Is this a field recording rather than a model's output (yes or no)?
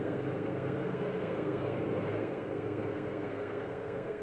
no